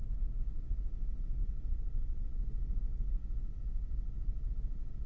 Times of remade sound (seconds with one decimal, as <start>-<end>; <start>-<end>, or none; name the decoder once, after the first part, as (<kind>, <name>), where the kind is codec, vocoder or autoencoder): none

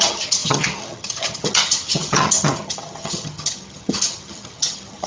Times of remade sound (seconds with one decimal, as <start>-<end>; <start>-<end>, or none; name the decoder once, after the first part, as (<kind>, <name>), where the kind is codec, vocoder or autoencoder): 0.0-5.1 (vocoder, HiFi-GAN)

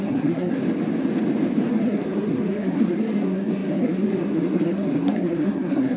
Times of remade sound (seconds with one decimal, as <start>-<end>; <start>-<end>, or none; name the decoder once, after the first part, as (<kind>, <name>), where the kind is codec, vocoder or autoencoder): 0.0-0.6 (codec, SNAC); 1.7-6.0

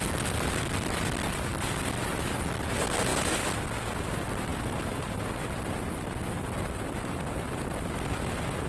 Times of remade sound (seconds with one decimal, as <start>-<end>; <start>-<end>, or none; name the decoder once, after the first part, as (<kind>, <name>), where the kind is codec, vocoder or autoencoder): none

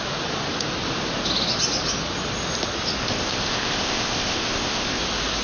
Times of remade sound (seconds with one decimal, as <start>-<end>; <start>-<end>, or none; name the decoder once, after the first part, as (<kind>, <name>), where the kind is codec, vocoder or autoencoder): 3.0-5.0 (codec, ZipCodec)